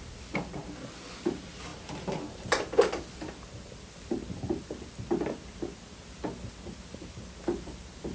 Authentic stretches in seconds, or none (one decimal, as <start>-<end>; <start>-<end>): 0.0-8.1